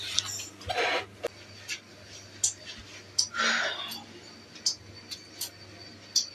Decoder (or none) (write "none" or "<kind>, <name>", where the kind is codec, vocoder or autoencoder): none